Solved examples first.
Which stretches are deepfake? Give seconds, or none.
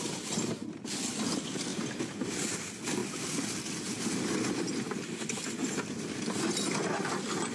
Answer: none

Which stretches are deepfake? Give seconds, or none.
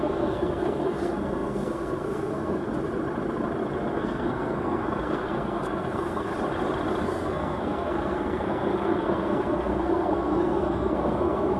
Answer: 0.0-2.7; 3.9-6.3; 7.0-11.6